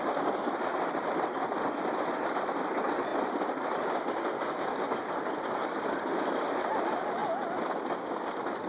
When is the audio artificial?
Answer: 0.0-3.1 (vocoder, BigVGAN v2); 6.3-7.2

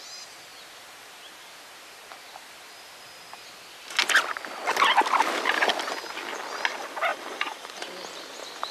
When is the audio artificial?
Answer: 7.1-7.8 (vocoder, BigVGAN v2)

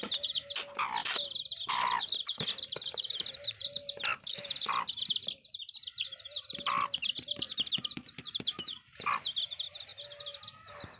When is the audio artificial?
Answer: 1.0-4.9 (vocoder, BigVGAN v2); 6.3-8.9; 9.9-10.4

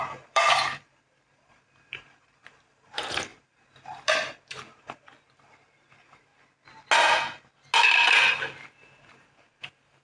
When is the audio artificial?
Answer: 0.0-6.3 (vocoder, BigVGAN v2); 7.8-10.0

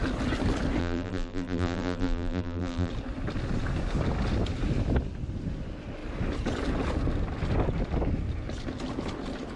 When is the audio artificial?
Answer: 0.8-2.9 (vocoder, BigVGAN v2)

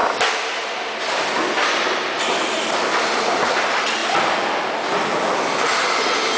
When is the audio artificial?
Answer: none

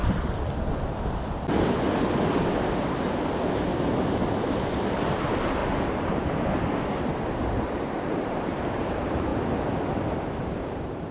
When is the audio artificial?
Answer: 4.9-9.3 (vocoder, BigVGAN v2); 10.4-11.1